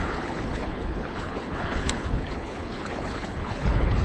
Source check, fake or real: fake